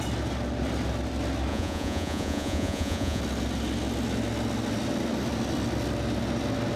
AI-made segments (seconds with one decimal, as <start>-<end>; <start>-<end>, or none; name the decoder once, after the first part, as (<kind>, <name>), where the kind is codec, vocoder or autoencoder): 1.5-3.2 (vocoder, Vocos)